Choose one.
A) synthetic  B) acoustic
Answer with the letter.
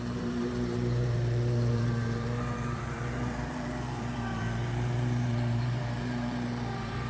A